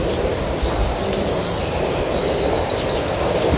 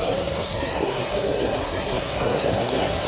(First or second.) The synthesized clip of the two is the second